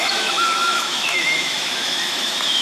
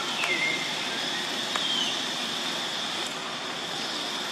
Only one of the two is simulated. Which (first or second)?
first